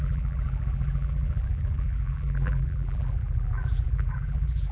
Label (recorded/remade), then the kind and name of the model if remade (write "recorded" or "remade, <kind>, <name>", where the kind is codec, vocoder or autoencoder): remade, vocoder, BigVGAN v2